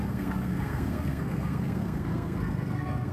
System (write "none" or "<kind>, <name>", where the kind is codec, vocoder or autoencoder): codec, SNAC